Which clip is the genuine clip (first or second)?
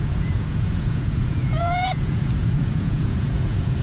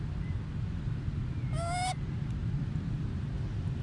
second